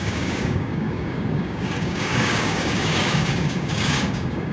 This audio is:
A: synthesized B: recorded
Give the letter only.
A